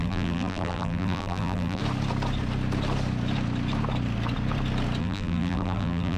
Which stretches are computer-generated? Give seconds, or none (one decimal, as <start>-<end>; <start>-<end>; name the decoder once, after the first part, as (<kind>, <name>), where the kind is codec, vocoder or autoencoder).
0.0-1.8 (vocoder, BigVGAN v2); 5.0-6.2